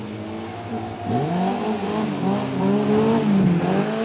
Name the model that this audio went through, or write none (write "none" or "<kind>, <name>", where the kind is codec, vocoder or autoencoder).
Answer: none